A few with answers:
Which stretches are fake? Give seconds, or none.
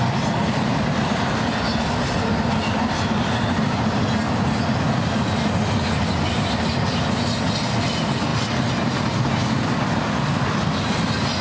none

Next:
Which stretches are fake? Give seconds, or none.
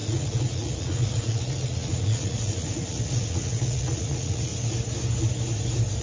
0.0-4.5 (vocoder, Vocos)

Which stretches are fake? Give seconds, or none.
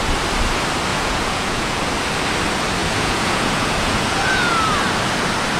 0.9-1.8 (vocoder, Vocos); 2.8-4.5